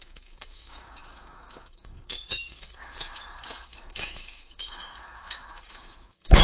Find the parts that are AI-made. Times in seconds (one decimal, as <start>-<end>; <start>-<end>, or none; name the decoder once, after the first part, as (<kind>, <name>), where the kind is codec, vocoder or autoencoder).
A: 0.0-6.4 (autoencoder, DAC-VAE)